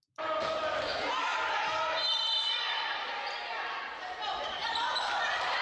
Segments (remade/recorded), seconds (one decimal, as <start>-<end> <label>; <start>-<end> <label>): 0.0-5.6 remade